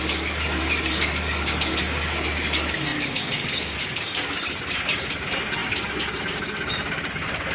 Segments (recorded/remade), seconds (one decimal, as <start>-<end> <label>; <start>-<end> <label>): 0.0-7.5 remade

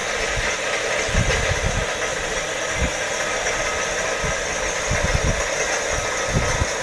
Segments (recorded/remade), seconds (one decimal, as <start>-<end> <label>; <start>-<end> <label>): 0.0-6.8 recorded